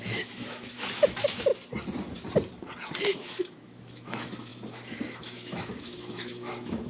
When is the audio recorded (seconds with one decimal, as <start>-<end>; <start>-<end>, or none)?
1.5-3.0

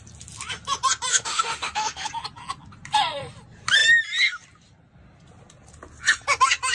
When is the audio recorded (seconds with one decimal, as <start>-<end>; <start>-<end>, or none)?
0.0-1.1; 2.1-6.7

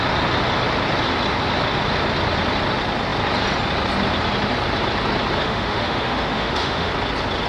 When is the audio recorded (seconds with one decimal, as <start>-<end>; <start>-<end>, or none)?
0.0-5.4; 6.9-7.5

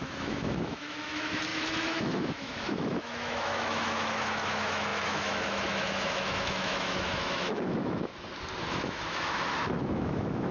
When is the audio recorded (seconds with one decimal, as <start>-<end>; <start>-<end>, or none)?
8.1-8.7

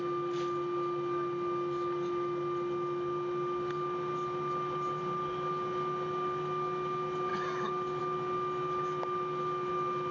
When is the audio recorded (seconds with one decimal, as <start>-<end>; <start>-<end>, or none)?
0.0-10.1

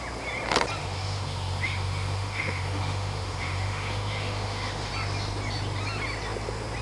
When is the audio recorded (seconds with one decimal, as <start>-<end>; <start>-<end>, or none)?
0.0-0.8; 4.9-6.8